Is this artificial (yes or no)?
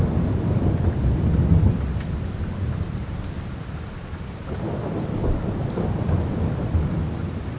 no